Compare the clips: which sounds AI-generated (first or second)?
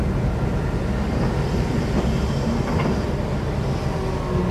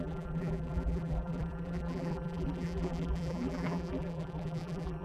second